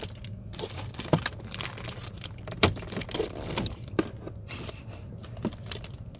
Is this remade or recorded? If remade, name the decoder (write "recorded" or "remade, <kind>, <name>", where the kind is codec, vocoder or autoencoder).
remade, vocoder, BigVGAN v2